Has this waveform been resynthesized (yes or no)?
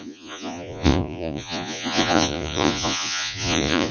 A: yes